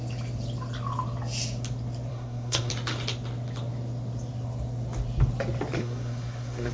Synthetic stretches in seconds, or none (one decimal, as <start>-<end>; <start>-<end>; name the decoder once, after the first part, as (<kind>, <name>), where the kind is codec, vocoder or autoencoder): 2.1-2.7 (codec, SNAC); 5.8-6.7